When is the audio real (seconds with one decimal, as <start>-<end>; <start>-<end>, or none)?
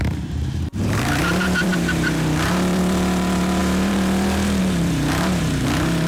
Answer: none